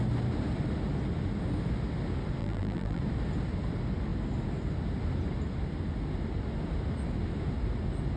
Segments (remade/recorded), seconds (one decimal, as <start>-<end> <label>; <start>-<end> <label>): 0.0-2.4 recorded; 2.4-3.0 remade; 3.0-8.2 recorded